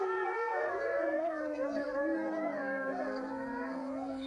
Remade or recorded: remade